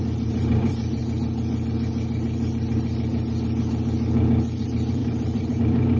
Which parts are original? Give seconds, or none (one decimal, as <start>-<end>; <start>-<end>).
1.0-4.6